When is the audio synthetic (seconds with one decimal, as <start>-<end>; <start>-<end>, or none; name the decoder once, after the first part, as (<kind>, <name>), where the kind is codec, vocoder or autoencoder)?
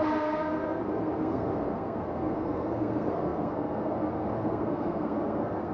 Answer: 0.0-5.7 (codec, SNAC)